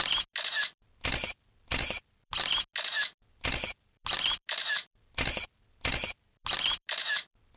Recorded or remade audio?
recorded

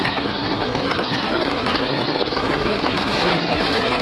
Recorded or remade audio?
remade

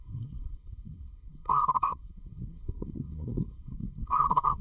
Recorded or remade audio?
remade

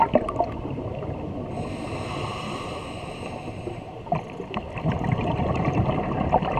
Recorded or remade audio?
recorded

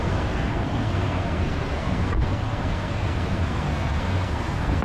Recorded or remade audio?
remade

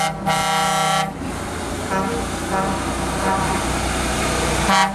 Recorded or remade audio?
recorded